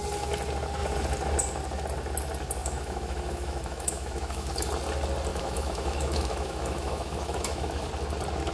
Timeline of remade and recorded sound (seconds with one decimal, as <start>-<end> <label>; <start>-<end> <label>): 0.0-2.6 recorded; 2.6-4.5 remade; 4.5-5.3 recorded; 5.3-7.9 remade; 7.9-8.5 recorded